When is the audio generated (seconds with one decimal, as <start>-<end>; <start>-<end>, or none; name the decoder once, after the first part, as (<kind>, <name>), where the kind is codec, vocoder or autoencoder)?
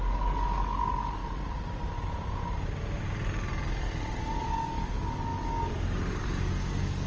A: 0.0-1.2 (codec, DAC); 4.1-7.1